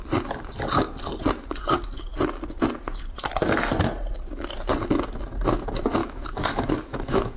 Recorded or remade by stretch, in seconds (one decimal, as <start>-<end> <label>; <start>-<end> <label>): 0.0-6.0 recorded; 6.0-7.4 remade